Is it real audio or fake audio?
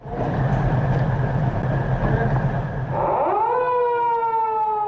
real